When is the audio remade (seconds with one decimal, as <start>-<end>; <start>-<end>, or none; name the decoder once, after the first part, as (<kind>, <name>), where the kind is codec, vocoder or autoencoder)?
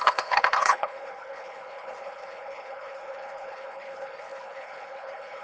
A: 0.0-5.4 (codec, HILCodec)